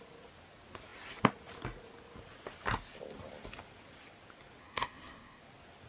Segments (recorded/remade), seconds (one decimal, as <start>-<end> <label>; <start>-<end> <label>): 0.0-4.6 recorded; 4.6-5.4 remade; 5.4-5.9 recorded